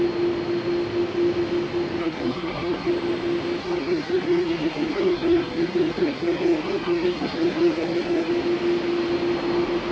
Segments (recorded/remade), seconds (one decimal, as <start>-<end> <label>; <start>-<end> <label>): 0.0-2.0 recorded; 2.0-2.9 remade; 2.9-3.6 recorded; 3.6-8.3 remade; 8.3-9.9 recorded